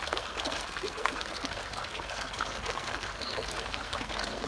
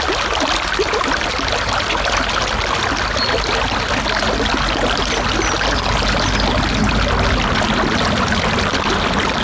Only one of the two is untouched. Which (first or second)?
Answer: second